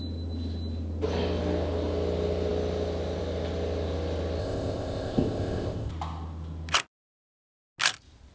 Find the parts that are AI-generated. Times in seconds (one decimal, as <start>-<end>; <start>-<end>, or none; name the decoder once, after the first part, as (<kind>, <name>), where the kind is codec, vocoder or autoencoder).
4.4-5.9 (codec, ZipCodec)